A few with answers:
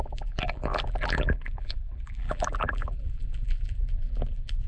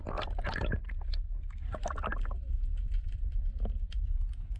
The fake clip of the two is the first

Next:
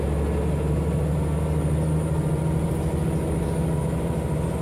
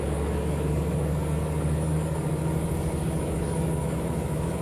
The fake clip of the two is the second